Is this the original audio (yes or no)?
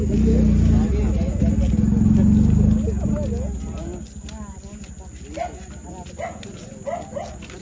yes